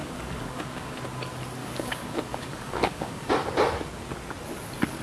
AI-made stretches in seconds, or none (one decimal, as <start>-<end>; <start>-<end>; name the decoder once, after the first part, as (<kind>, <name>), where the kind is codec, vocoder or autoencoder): 0.0-1.0 (codec, DAC); 1.6-3.3